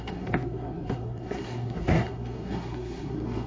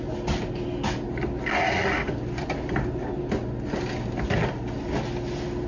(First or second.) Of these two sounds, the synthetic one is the first